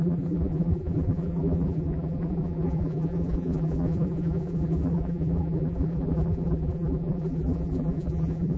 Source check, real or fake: fake